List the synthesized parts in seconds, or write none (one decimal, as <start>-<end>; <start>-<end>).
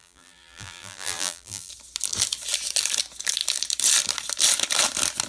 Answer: 0.0-1.7